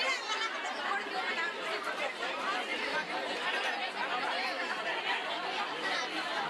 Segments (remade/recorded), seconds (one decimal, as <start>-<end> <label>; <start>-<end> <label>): 0.0-2.7 recorded; 2.7-3.4 remade; 3.4-5.2 recorded; 5.2-6.0 remade; 6.0-6.5 recorded